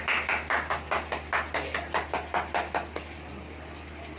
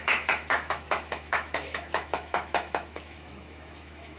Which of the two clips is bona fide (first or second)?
first